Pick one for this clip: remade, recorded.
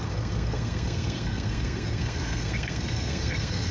remade